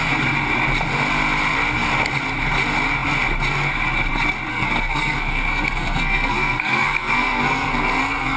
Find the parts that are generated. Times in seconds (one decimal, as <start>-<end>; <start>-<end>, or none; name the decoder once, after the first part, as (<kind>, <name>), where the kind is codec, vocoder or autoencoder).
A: 4.5-8.4 (codec, SNAC)